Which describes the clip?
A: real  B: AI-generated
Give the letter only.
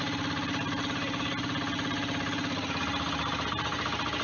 A